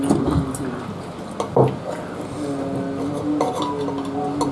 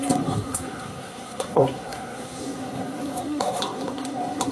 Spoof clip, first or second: second